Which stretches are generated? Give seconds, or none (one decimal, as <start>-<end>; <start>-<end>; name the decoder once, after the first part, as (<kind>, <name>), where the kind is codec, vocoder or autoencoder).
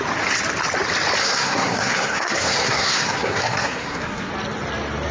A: 1.2-4.3 (codec, SNAC)